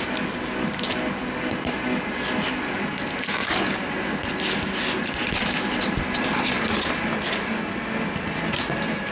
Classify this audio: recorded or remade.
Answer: recorded